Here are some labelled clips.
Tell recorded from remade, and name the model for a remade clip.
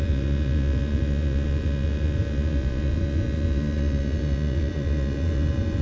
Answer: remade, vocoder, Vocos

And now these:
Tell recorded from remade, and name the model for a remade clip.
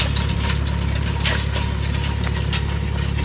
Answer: recorded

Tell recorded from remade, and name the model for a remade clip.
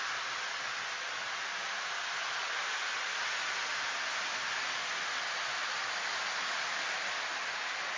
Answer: recorded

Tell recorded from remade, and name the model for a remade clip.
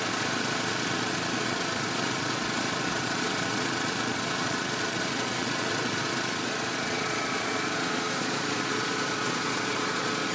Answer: remade, vocoder, Vocos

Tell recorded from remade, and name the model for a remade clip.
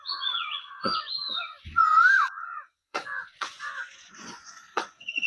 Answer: remade, vocoder, Vocos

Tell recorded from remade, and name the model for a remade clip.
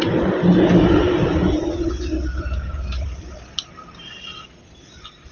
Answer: recorded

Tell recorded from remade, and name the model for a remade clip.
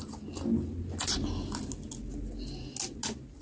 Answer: recorded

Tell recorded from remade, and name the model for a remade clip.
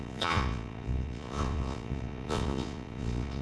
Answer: remade, vocoder, Vocos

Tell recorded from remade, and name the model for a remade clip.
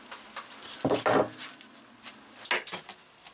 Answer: recorded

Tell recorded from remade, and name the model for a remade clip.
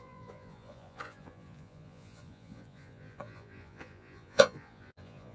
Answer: remade, vocoder, Vocos